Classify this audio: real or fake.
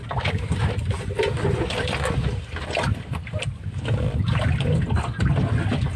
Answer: real